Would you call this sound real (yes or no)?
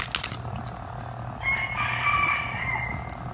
yes